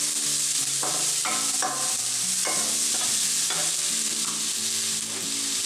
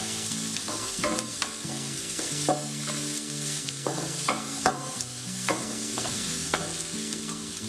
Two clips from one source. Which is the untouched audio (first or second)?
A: first